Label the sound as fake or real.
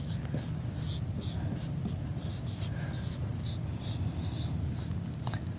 real